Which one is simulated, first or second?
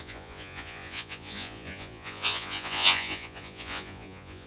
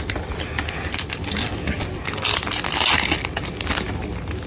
first